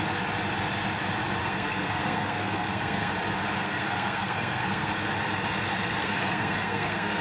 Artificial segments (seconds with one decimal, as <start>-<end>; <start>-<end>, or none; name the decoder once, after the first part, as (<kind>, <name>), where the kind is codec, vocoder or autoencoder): 1.4-3.1 (codec, SNAC); 3.6-4.9; 6.0-7.2